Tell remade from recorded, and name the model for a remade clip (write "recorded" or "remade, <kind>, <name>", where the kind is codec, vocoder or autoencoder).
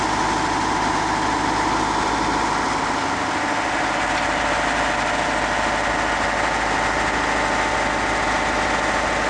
recorded